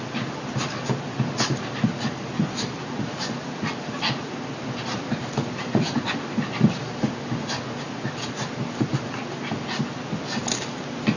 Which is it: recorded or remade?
recorded